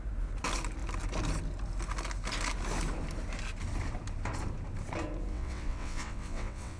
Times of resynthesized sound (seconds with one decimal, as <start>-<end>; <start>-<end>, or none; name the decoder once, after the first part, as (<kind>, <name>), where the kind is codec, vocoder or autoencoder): 5.3-6.8 (vocoder, WaveNeXt)